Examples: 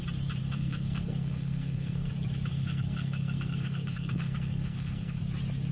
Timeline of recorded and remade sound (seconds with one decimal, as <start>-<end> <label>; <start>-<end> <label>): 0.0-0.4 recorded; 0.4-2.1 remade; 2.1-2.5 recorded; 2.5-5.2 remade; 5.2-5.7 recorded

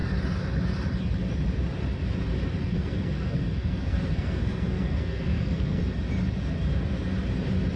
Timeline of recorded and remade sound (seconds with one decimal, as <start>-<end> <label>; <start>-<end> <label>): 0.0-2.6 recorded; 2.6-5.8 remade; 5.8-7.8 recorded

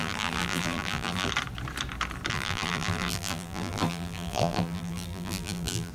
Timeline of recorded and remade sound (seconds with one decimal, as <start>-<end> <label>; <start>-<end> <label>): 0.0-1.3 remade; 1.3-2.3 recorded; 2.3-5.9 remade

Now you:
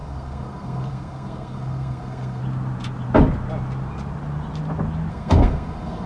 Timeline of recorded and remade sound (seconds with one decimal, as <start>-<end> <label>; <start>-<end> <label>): 0.0-2.4 remade; 2.4-5.1 recorded; 5.1-6.1 remade

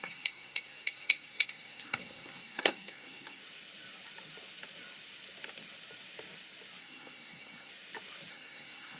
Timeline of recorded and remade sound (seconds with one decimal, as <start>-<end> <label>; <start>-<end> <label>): 0.0-3.4 remade; 3.4-6.8 recorded; 6.8-7.7 remade; 7.7-8.3 recorded; 8.3-9.0 remade